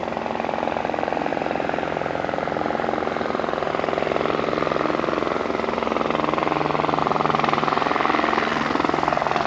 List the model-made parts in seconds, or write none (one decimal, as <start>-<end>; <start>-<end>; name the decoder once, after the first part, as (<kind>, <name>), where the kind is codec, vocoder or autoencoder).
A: 0.0-0.8 (vocoder, BigVGAN v2); 1.3-3.7; 7.0-7.6